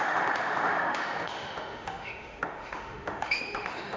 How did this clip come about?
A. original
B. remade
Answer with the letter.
B